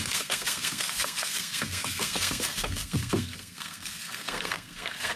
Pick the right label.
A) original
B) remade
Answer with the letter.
B